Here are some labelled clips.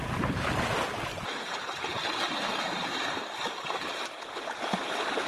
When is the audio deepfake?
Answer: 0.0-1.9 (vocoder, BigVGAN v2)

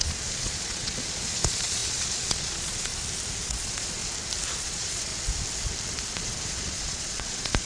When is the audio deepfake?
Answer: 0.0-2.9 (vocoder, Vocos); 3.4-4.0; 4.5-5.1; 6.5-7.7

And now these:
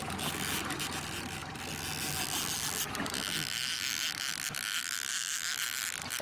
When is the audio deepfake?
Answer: none